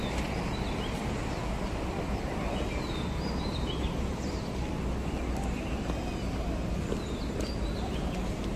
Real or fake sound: real